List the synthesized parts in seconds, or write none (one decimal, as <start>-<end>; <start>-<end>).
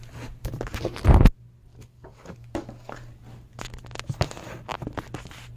1.7-2.9